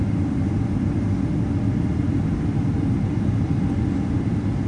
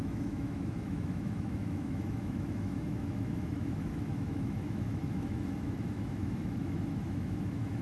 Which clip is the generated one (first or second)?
second